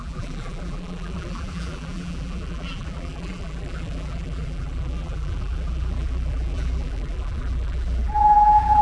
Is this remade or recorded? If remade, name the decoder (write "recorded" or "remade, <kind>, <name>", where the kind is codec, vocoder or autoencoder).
remade, vocoder, BigVGAN v2